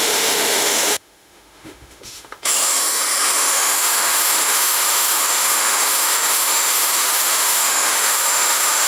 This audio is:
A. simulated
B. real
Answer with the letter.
A